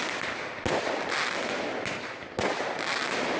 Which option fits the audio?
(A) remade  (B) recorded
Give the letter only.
B